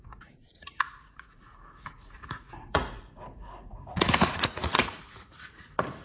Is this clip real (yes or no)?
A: no